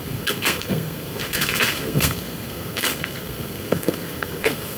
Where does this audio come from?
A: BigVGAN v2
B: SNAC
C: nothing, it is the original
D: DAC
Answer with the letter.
B